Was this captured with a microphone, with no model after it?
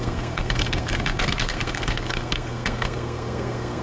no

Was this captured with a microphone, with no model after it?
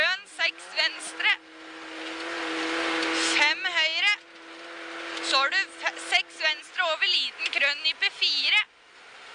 yes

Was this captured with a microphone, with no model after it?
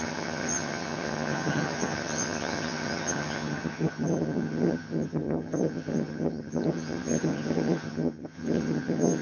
no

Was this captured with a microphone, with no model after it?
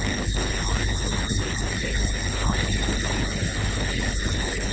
no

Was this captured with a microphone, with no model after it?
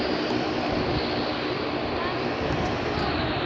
yes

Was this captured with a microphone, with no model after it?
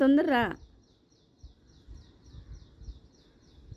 yes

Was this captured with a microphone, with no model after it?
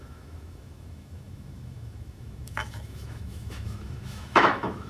no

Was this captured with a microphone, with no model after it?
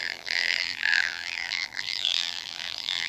no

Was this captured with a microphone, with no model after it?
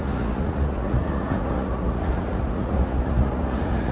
no